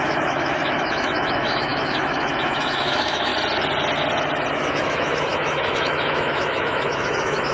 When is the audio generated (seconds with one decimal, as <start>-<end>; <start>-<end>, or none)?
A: 0.0-3.3; 4.5-7.5